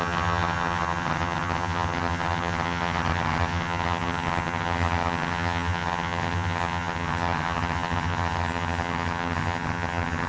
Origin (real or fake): fake